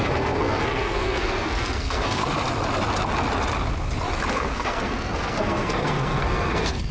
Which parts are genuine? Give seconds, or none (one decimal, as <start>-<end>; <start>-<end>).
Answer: 2.2-4.3